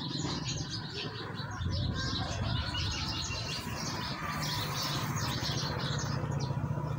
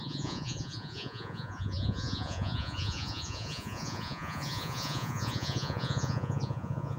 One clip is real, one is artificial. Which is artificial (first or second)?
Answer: second